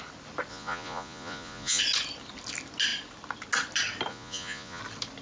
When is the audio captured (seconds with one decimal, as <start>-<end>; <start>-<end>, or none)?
0.0-0.5; 1.8-4.1; 4.8-5.2